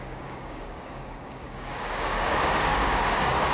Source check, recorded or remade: remade